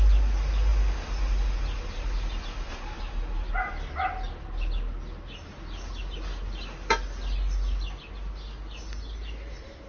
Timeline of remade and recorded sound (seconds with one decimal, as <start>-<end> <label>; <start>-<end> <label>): 0.0-9.9 recorded